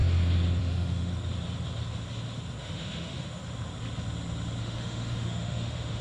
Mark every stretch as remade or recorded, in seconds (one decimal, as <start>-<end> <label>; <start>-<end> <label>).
0.0-0.6 recorded; 0.6-1.1 remade; 1.1-2.6 recorded; 2.6-3.4 remade; 3.4-4.6 recorded; 4.6-6.0 remade